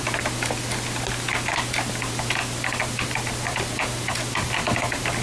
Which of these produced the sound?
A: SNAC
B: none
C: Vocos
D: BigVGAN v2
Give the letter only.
B